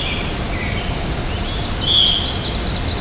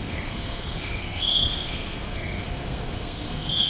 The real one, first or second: first